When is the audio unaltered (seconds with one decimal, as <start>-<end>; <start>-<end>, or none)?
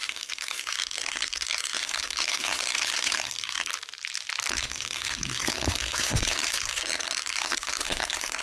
3.7-4.5